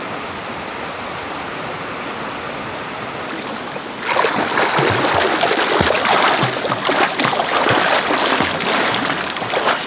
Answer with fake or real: real